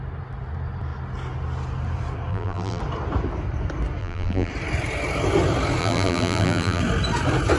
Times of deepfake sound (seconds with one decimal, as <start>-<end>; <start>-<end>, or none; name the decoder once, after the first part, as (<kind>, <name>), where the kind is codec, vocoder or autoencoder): 2.3-2.8 (vocoder, BigVGAN v2); 4.0-4.5; 5.8-6.8